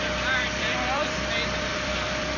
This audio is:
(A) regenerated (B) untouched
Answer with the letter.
A